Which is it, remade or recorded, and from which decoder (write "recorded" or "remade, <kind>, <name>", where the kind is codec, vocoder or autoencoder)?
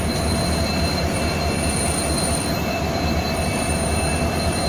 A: remade, vocoder, BigVGAN v2